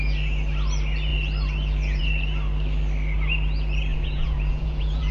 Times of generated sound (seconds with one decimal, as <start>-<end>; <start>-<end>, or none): 3.9-5.1